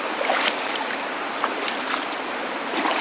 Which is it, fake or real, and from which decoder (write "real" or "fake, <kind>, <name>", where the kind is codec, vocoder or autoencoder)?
fake, vocoder, BigVGAN v2